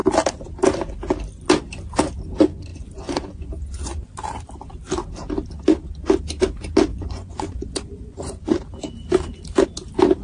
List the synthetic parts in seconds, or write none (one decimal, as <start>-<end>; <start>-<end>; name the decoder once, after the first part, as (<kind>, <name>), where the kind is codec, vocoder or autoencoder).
2.7-4.1 (vocoder, Vocos); 6.9-8.6